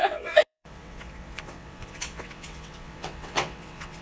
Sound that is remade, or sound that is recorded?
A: remade